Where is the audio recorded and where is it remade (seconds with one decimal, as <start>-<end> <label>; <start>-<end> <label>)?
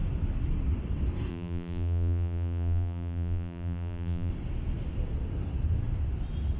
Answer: 0.0-1.3 recorded; 1.3-4.3 remade; 4.3-6.6 recorded